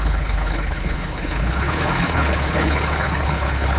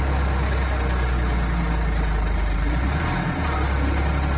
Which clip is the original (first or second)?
second